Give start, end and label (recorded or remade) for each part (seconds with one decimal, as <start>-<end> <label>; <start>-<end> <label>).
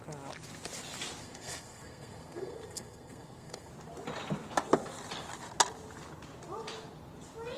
0.0-1.2 recorded; 1.2-3.7 remade; 3.7-7.6 recorded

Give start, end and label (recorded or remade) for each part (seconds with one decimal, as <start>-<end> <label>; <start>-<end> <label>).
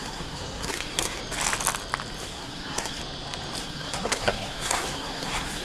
0.0-1.2 remade; 1.2-2.2 recorded; 2.2-3.0 remade; 3.0-3.6 recorded; 3.6-5.6 remade